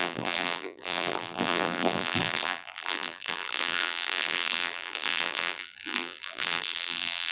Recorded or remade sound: remade